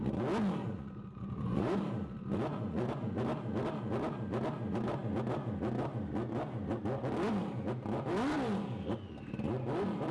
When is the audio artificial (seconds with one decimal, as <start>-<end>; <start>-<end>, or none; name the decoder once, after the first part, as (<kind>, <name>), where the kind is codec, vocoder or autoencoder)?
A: 0.6-1.8 (vocoder, Vocos); 2.5-3.2